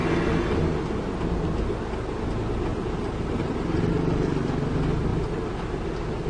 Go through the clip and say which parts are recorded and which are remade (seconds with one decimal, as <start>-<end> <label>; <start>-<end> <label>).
0.0-2.7 recorded; 2.7-3.9 remade; 3.9-6.3 recorded